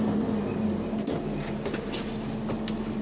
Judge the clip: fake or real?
real